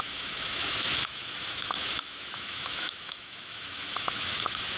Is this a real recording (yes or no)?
no